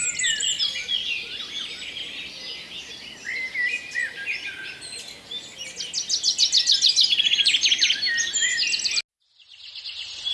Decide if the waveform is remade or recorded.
recorded